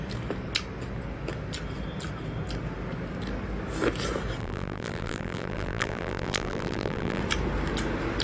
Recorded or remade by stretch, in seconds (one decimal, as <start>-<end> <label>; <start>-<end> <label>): 0.0-4.4 recorded; 4.4-7.2 remade; 7.2-8.2 recorded